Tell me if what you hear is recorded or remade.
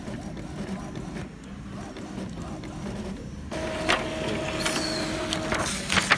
recorded